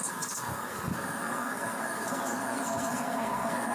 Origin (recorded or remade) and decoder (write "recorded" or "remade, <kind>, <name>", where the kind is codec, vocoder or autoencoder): remade, codec, SNAC